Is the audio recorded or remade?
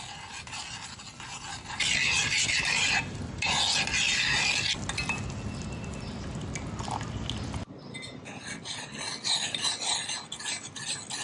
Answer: recorded